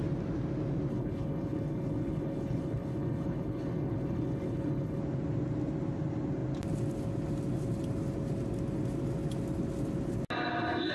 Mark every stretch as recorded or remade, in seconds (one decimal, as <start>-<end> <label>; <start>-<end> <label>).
0.0-0.9 recorded; 0.9-5.0 remade; 5.0-10.9 recorded